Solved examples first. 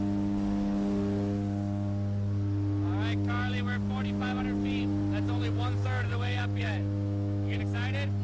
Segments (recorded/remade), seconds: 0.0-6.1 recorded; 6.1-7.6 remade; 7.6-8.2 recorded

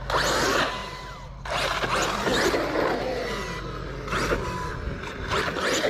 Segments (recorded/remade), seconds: 0.0-0.8 recorded; 0.8-1.3 remade; 1.3-5.9 recorded

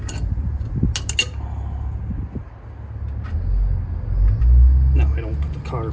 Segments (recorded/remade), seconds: 0.0-5.9 recorded